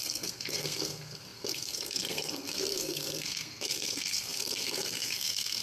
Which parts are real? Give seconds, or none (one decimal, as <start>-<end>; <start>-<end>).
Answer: none